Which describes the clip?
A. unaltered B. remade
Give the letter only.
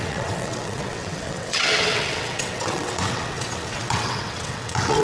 B